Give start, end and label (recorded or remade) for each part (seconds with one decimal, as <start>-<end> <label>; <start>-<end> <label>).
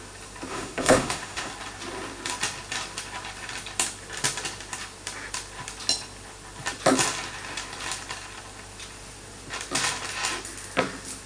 0.0-0.5 recorded; 0.5-1.5 remade; 1.5-11.3 recorded